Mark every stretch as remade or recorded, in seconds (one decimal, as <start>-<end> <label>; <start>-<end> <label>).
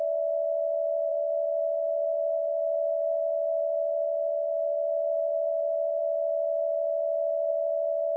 0.0-1.1 recorded; 1.1-6.0 remade; 6.0-8.2 recorded